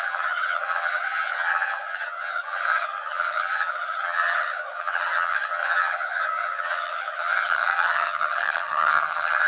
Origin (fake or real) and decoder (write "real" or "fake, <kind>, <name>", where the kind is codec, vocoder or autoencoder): fake, vocoder, HiFi-GAN